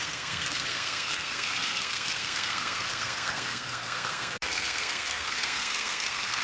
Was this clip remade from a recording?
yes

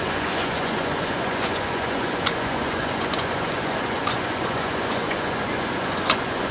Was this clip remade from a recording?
yes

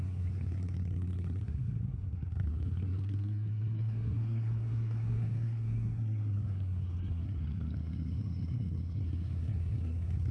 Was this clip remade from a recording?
yes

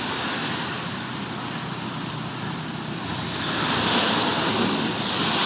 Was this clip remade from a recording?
no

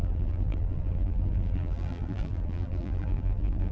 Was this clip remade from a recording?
yes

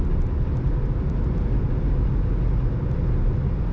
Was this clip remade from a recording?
no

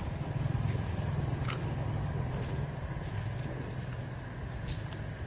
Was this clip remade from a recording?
no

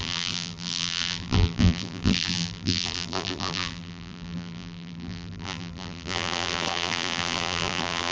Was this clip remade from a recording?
yes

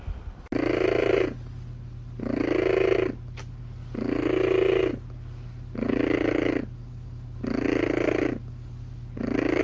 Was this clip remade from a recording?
no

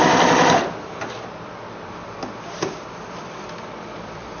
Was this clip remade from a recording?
yes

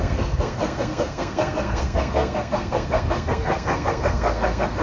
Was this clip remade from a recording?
yes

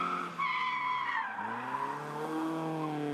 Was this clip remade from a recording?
no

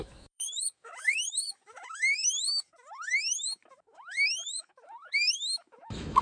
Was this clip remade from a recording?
yes